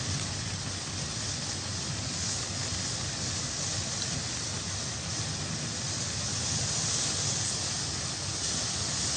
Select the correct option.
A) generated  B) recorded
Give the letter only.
B